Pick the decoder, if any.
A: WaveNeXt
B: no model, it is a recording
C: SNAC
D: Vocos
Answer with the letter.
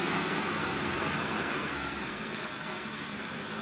C